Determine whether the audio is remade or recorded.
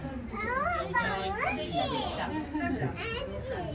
recorded